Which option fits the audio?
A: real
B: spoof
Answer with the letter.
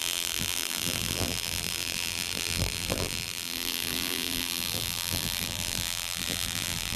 B